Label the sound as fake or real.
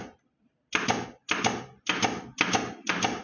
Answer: real